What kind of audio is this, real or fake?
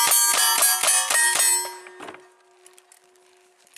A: real